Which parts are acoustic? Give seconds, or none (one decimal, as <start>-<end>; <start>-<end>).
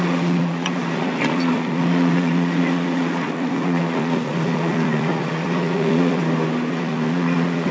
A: 6.2-6.7